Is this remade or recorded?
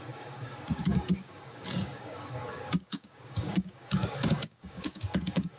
remade